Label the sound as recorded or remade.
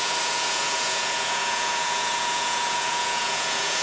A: remade